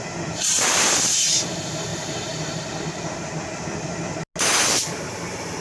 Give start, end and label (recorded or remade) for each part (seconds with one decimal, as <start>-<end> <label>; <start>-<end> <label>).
0.0-5.6 recorded